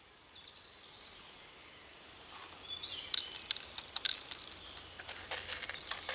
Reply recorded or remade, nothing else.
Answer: recorded